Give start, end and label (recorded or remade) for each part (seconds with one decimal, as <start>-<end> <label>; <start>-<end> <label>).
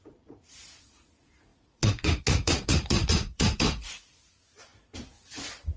0.0-5.8 remade